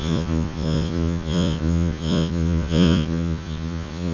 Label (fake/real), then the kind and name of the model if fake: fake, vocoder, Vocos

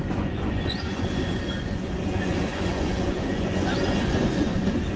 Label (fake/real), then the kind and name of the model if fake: fake, vocoder, Vocos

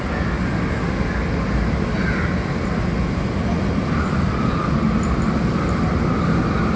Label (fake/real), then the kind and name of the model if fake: real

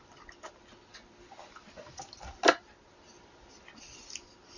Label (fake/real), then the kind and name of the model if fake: real